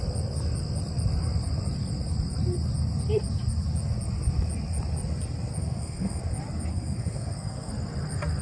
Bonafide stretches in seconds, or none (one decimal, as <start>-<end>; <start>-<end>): 0.0-5.6; 6.2-6.7; 7.7-8.4